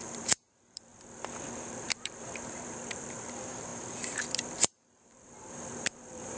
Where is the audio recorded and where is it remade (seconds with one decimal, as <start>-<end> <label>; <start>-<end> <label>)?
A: 0.0-0.9 remade; 0.9-1.5 recorded; 1.5-6.4 remade